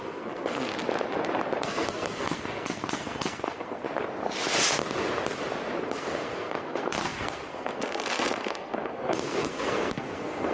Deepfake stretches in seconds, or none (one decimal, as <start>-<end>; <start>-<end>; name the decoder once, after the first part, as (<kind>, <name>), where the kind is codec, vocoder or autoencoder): 0.0-0.7 (codec, SNAC); 1.6-3.8; 5.9-10.5